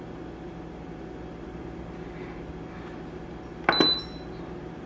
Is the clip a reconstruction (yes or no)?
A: no